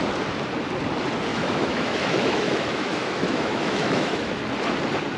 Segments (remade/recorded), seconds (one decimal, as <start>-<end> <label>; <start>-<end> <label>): 0.0-1.3 recorded; 1.3-4.4 remade; 4.4-5.2 recorded